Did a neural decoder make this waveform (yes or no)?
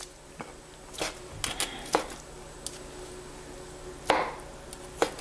no